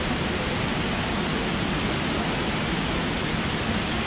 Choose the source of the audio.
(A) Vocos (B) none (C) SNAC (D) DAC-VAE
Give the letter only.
B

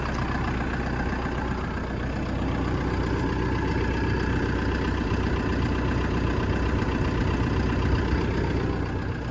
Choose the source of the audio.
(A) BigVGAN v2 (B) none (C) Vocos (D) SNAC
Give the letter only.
B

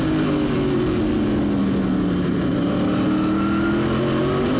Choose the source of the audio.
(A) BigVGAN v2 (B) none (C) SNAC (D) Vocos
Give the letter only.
B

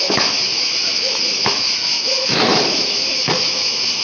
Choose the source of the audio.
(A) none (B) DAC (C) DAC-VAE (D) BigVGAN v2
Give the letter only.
C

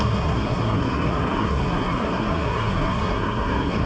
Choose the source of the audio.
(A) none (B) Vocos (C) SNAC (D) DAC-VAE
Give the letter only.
C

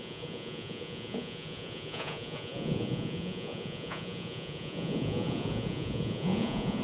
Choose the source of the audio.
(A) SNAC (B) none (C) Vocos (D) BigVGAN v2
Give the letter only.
C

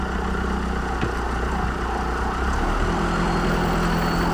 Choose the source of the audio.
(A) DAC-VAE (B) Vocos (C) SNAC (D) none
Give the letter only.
D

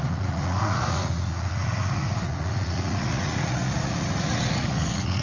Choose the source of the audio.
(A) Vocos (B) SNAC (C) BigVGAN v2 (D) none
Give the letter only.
A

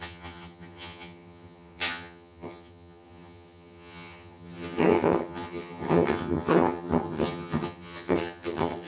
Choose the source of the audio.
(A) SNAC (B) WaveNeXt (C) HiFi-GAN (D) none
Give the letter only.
C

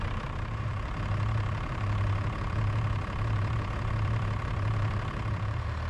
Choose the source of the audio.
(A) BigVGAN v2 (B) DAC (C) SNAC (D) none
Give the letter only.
A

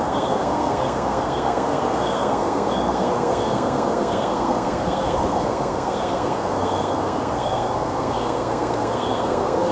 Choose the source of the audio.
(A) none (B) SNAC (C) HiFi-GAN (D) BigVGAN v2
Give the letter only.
B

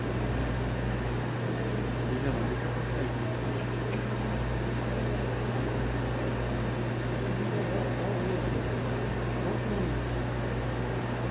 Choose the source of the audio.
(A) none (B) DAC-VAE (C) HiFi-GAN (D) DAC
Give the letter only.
A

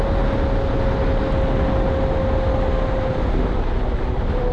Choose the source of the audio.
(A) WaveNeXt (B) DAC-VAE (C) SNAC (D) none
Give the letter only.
D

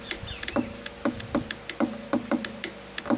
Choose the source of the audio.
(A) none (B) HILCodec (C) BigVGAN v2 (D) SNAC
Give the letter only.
A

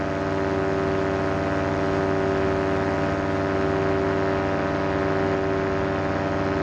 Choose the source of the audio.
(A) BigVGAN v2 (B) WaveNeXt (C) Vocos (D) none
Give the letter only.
D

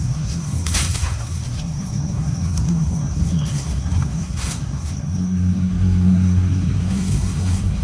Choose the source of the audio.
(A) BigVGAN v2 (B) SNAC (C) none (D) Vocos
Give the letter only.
B